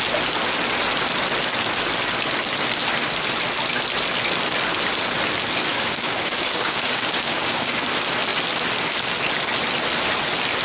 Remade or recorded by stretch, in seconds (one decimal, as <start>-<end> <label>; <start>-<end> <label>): 0.0-5.7 recorded; 5.7-7.8 remade; 7.8-10.6 recorded